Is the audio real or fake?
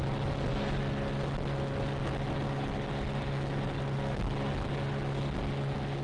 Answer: real